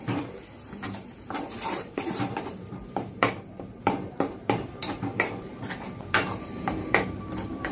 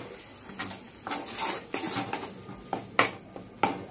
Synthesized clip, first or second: first